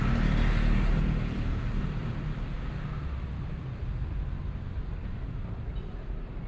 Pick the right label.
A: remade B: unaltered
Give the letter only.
B